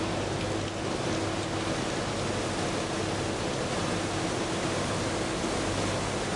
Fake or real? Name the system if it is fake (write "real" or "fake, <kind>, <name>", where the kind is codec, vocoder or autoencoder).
real